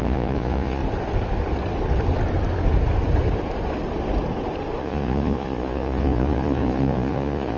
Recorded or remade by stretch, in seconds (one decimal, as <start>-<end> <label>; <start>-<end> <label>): 0.0-0.8 remade; 0.8-4.8 recorded; 4.8-7.6 remade